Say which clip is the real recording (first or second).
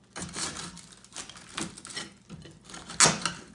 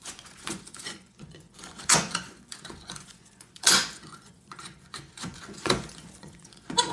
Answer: first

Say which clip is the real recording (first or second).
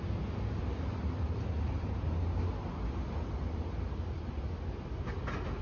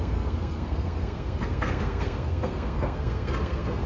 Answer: first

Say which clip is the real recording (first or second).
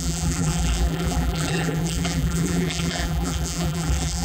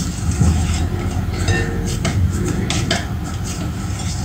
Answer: second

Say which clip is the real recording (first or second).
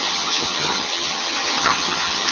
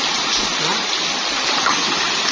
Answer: second